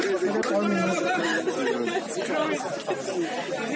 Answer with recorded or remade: recorded